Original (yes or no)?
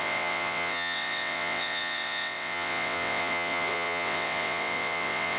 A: no